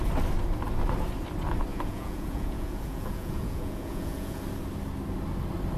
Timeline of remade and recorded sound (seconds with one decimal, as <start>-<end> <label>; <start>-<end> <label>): 0.0-1.7 recorded; 1.7-4.4 remade; 4.4-5.8 recorded